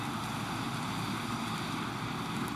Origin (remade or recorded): recorded